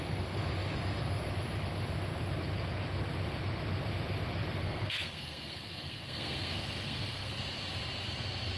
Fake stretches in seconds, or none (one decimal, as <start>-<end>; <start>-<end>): 4.6-7.3